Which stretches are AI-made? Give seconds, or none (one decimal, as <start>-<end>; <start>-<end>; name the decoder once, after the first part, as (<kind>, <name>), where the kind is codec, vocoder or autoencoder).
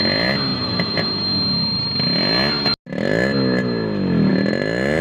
0.5-1.1 (vocoder, BigVGAN v2)